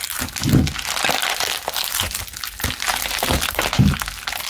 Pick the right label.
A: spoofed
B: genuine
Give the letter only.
B